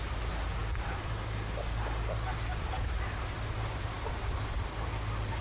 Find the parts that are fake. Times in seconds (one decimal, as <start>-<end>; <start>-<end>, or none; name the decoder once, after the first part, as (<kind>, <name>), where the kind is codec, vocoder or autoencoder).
none